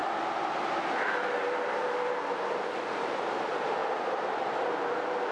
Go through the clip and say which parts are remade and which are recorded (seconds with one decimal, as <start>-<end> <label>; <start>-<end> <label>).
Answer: 0.0-5.3 recorded